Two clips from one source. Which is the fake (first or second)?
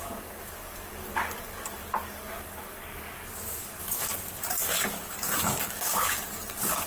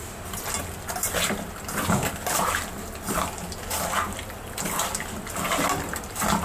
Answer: first